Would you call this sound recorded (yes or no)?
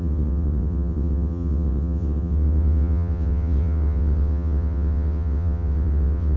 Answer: no